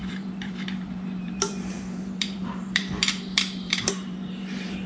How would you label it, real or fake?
fake